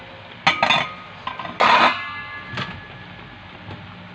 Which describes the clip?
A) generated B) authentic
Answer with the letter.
B